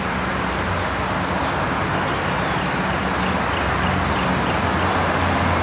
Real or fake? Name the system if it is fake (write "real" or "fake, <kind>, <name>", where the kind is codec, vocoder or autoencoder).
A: real